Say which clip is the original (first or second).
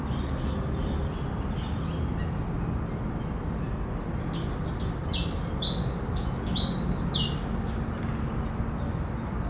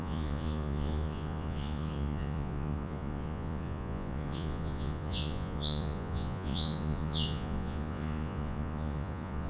first